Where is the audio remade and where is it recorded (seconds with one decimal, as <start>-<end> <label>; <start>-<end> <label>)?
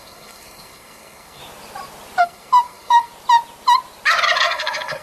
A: 0.0-1.4 remade; 1.4-2.2 recorded; 2.2-3.1 remade; 3.1-4.4 recorded; 4.4-5.0 remade